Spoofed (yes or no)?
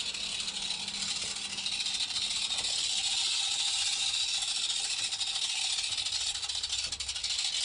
no